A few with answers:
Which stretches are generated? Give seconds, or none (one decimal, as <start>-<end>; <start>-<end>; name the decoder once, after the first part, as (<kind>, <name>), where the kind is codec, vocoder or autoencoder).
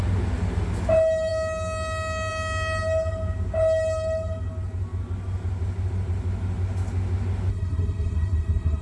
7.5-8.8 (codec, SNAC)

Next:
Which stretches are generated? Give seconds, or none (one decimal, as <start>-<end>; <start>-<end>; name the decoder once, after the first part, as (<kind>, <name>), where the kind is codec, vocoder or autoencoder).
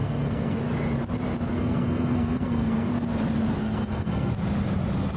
0.0-0.6 (codec, SNAC); 1.5-2.9; 3.6-4.3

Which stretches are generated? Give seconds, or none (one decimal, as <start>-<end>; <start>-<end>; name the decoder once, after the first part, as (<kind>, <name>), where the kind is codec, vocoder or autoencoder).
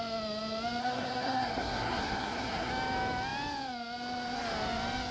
0.8-2.7 (codec, SNAC)